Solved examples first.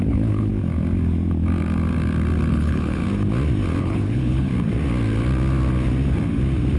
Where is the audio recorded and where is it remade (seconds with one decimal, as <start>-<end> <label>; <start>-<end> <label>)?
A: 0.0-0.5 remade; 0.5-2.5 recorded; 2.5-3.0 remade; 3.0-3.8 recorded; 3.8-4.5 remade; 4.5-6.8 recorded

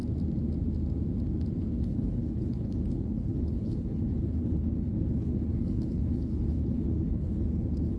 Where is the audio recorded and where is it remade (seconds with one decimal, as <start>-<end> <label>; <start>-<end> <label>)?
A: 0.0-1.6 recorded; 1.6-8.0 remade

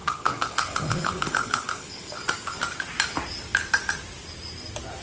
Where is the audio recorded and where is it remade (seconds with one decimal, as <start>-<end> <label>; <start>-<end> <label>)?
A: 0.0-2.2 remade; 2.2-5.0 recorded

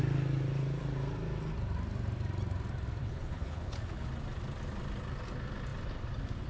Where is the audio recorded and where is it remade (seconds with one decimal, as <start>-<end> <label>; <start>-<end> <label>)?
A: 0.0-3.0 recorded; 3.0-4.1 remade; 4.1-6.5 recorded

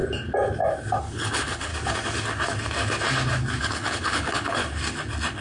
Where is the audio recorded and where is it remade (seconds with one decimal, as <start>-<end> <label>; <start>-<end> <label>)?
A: 0.0-1.0 recorded; 1.0-1.7 remade; 1.7-3.6 recorded; 3.6-4.6 remade; 4.6-5.4 recorded

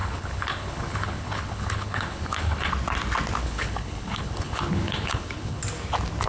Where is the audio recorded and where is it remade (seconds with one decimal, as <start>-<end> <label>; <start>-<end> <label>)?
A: 0.0-2.7 remade; 2.7-3.4 recorded; 3.4-5.6 remade; 5.6-6.3 recorded

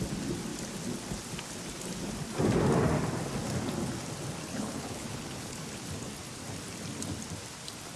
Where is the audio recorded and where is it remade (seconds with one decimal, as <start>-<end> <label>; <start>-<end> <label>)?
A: 0.0-4.5 recorded; 4.5-5.7 remade; 5.7-8.0 recorded

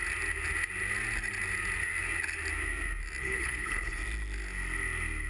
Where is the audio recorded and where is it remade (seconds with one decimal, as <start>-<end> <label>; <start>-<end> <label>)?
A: 0.0-3.2 recorded; 3.2-4.0 remade; 4.0-5.3 recorded